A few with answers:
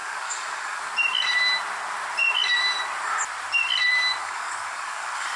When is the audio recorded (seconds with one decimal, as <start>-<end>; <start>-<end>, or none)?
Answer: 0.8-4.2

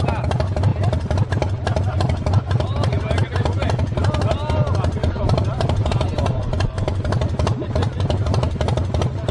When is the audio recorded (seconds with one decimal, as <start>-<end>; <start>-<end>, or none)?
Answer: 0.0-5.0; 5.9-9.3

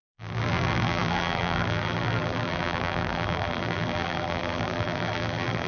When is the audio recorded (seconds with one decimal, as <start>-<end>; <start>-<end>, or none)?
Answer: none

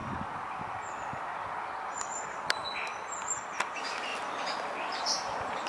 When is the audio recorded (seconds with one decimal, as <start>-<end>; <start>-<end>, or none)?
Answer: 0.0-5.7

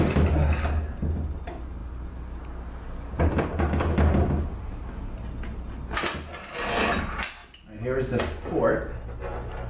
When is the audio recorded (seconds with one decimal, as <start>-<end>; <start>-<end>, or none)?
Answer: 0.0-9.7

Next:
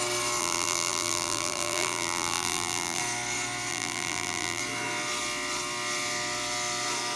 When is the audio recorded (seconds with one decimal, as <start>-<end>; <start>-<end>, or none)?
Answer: 0.0-0.4; 3.0-3.7; 4.6-7.2

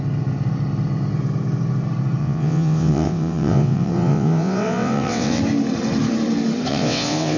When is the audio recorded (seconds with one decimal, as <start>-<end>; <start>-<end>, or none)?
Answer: 0.0-2.2; 5.4-6.7